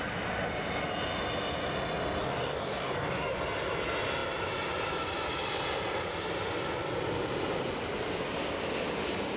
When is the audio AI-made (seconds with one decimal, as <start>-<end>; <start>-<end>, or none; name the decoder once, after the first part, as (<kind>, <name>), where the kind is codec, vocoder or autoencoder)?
2.2-3.4 (codec, DAC)